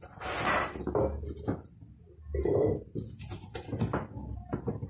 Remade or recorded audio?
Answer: recorded